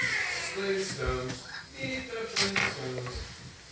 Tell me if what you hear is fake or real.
real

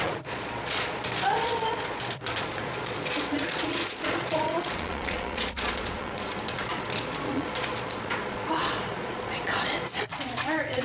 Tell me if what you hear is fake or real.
fake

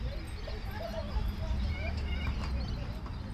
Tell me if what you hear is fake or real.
real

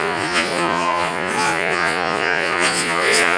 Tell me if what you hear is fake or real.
fake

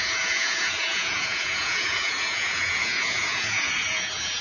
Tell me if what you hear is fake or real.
fake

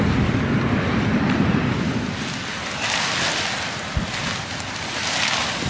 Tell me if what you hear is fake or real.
real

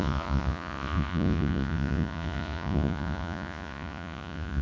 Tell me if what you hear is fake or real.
fake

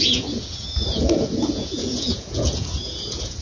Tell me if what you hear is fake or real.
fake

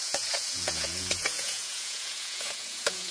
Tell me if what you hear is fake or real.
fake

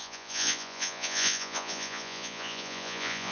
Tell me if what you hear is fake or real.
fake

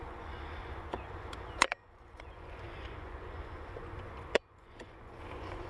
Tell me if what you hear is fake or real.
fake